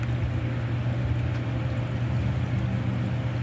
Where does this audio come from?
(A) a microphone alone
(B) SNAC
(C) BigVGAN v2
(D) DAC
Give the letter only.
A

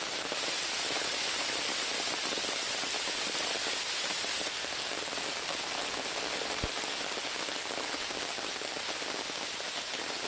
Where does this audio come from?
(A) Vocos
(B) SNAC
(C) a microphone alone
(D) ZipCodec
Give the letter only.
C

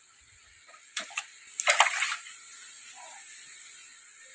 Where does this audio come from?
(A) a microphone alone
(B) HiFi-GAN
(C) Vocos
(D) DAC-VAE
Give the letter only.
A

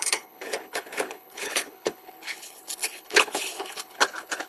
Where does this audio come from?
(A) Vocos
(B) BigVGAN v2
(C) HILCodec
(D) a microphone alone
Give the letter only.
C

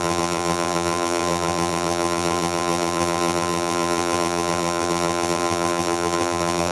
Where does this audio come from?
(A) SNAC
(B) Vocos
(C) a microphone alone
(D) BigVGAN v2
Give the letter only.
D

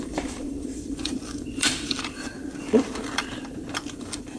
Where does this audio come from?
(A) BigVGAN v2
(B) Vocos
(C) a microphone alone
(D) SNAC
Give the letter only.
A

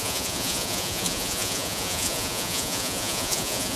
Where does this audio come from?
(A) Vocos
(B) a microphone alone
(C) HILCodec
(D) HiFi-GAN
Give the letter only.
A